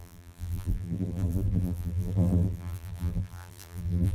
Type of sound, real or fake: fake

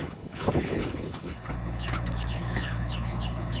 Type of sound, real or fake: fake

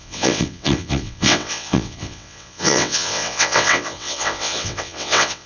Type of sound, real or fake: fake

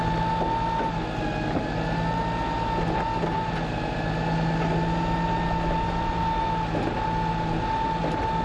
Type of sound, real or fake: real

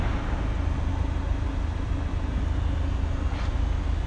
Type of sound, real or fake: real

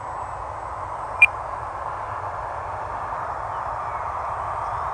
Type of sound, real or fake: fake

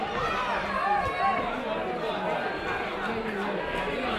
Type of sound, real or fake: real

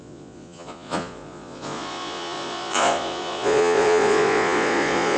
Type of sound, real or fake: fake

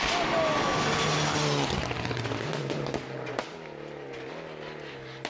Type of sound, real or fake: real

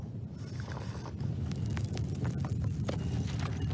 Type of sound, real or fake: real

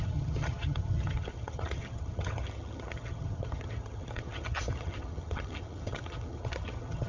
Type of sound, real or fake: fake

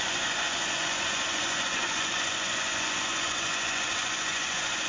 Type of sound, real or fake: fake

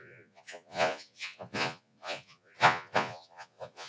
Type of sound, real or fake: fake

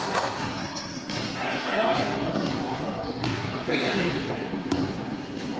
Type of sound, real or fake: fake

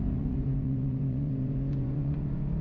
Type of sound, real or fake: fake